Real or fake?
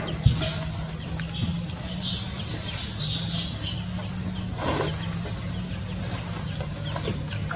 real